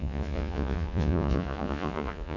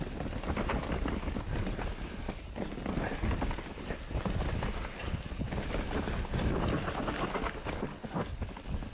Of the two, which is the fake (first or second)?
first